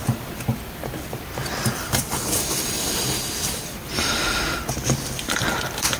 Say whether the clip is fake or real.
fake